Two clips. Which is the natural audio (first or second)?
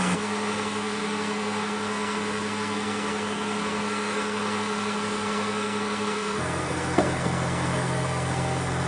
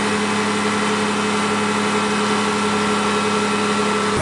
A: second